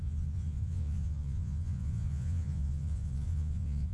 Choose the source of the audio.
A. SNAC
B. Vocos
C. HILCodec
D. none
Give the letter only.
B